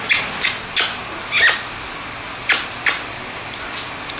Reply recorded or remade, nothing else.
recorded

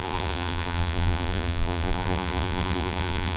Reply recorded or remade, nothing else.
remade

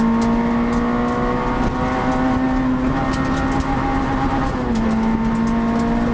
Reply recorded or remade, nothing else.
recorded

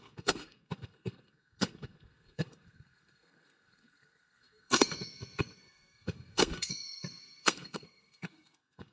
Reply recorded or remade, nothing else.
remade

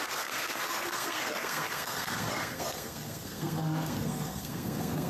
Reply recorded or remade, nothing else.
remade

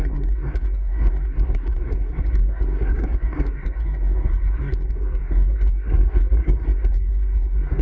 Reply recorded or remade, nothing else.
remade